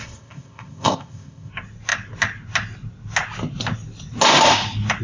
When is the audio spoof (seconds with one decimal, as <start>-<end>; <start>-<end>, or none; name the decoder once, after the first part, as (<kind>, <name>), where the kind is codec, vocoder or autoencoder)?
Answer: 0.0-1.5 (codec, ZipCodec)